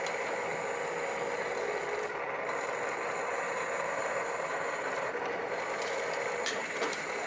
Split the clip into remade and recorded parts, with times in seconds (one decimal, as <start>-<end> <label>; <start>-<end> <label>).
0.0-0.5 remade; 0.5-3.3 recorded; 3.3-7.3 remade